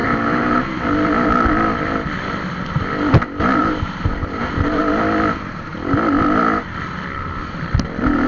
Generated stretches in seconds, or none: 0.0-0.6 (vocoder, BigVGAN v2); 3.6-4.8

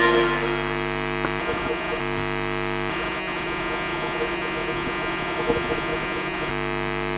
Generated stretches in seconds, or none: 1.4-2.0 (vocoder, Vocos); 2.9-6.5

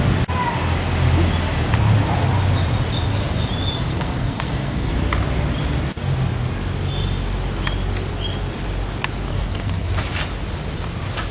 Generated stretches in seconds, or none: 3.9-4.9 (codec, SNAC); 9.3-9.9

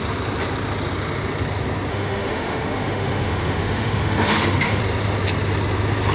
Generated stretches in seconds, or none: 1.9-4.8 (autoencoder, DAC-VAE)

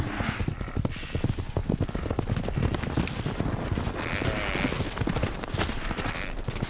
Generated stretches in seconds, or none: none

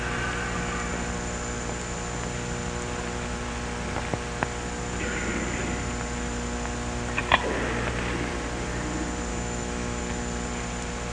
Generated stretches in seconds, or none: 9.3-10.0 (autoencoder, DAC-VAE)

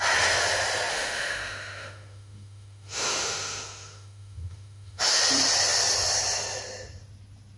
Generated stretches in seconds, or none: 0.9-5.2 (autoencoder, DAC-VAE)

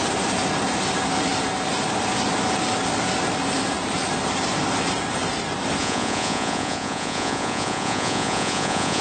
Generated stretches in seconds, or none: 5.8-9.0 (vocoder, Vocos)